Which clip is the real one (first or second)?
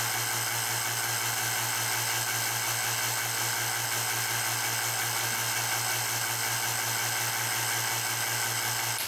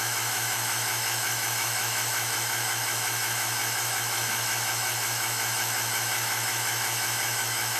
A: first